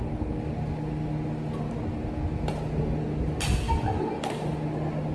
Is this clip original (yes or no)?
yes